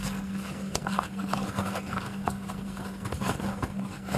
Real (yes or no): no